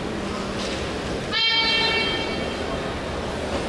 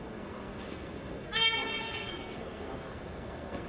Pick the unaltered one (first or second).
first